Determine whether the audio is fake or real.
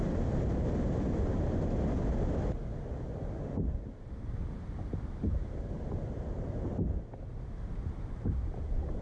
real